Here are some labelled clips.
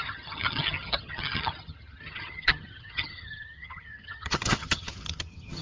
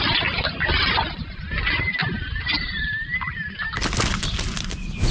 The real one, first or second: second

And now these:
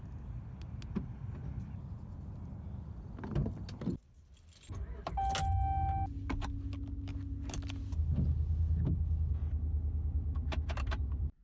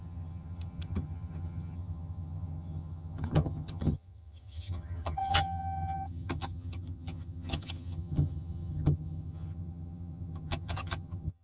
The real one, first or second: first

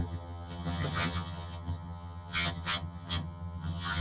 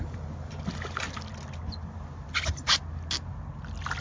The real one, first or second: second